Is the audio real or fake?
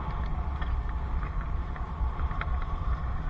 real